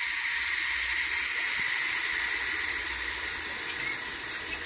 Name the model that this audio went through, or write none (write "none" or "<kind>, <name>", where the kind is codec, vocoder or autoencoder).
none